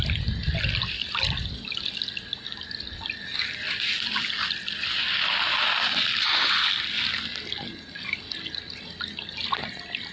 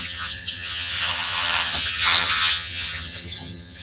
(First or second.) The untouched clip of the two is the first